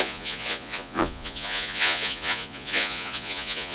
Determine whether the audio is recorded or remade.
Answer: remade